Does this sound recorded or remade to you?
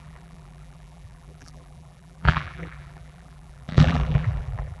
remade